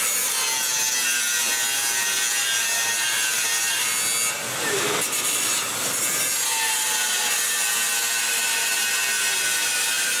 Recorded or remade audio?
recorded